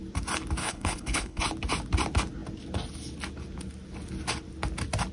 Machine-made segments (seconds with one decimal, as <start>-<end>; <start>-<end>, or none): 0.6-1.4

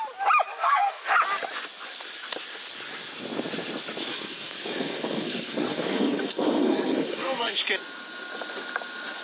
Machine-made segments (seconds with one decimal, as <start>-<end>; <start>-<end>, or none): 0.5-1.1; 4.1-7.6

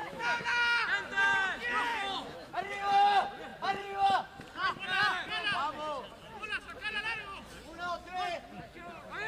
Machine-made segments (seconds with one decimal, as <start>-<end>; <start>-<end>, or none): 0.0-0.8; 1.9-2.5

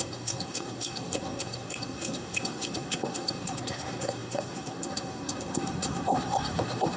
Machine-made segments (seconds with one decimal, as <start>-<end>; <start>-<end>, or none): 0.0-7.0

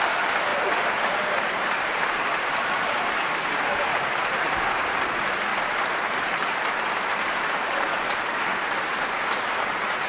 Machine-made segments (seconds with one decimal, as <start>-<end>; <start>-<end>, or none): 0.5-5.0; 5.5-6.7

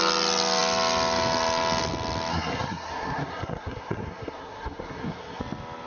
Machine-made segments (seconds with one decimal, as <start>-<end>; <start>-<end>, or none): 2.3-5.4

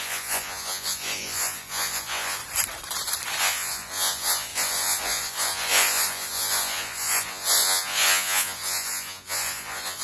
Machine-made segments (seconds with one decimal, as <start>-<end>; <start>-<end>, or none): 0.0-2.4; 3.4-10.0

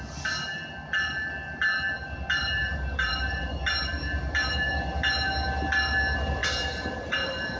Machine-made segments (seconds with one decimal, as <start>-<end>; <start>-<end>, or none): 2.4-3.5; 6.4-7.6